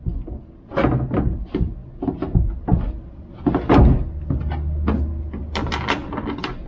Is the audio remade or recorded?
recorded